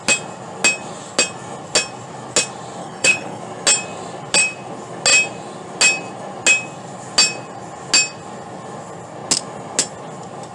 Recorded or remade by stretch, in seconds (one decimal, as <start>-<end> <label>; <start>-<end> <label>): 0.0-2.8 recorded; 2.8-3.4 remade; 3.4-10.5 recorded